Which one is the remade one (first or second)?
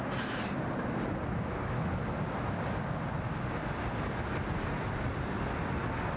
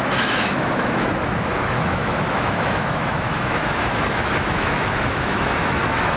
second